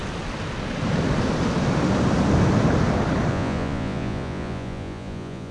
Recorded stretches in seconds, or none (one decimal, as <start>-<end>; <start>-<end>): 0.0-3.3